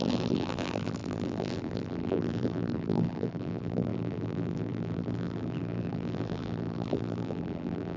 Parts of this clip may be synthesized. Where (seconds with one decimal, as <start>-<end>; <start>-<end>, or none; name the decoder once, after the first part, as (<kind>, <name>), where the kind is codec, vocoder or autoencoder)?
0.0-8.0 (vocoder, BigVGAN v2)